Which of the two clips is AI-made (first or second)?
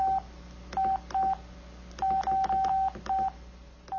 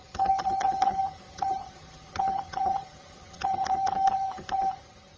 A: second